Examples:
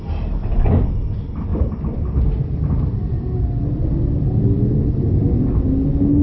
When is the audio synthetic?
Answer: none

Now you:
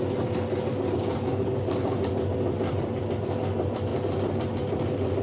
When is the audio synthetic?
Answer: 0.7-2.1 (codec, DAC)